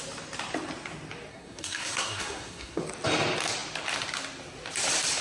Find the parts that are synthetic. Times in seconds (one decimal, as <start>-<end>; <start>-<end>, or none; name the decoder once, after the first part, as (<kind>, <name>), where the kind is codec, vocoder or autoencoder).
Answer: 1.3-2.8 (codec, SNAC)